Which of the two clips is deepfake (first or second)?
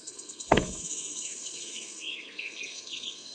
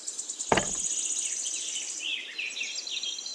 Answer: first